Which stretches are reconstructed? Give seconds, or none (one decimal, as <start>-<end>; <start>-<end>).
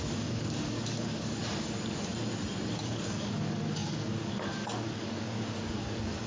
0.0-1.4; 2.7-6.3